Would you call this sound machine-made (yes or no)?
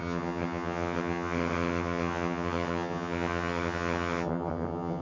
yes